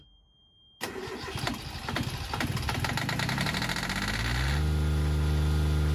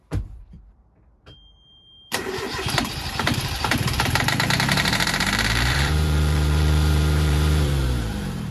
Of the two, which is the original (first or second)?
first